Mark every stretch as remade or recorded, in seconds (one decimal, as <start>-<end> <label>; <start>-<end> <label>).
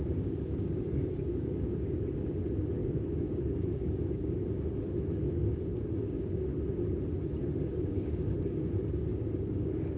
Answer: 0.0-6.5 remade; 6.5-7.7 recorded; 7.7-10.0 remade